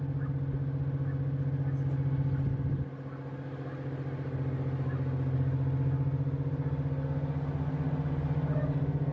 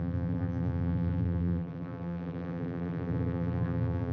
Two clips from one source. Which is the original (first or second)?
first